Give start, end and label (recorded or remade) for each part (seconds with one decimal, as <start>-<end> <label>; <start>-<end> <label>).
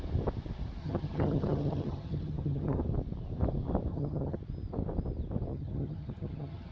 0.0-0.8 recorded; 0.8-2.8 remade; 2.8-3.9 recorded; 3.9-4.4 remade; 4.4-5.5 recorded; 5.5-6.7 remade